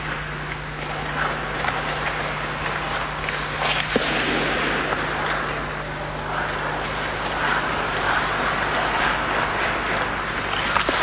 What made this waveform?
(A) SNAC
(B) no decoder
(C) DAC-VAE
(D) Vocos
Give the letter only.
B